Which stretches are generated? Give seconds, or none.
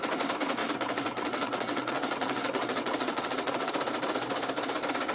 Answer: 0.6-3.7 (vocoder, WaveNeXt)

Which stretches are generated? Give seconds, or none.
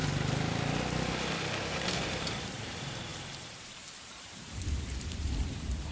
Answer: 1.6-5.9 (vocoder, BigVGAN v2)